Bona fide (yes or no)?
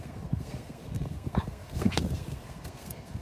no